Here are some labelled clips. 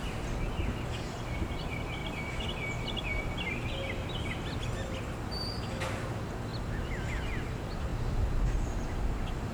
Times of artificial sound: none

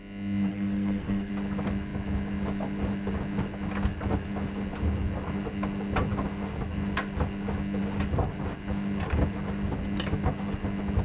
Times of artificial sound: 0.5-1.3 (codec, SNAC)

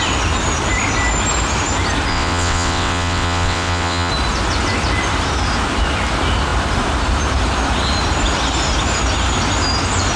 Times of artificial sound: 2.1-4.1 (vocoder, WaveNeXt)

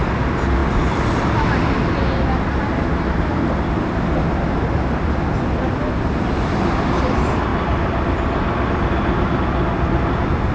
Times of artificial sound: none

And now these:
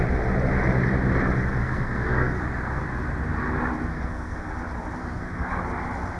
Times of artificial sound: 1.6-2.8 (codec, SNAC); 3.9-4.5; 5.0-5.6

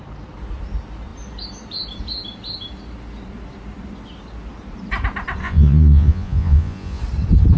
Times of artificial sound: 5.4-7.0 (vocoder, Vocos)

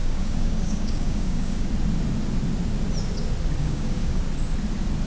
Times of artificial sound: 0.0-1.7 (codec, DAC); 3.6-4.2